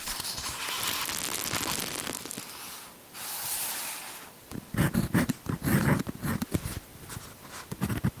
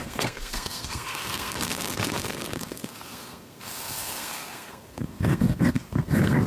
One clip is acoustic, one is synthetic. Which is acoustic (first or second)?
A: first